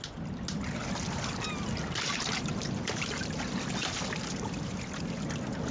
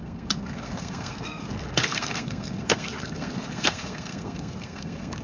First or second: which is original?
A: first